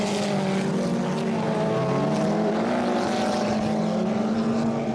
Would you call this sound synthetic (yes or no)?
no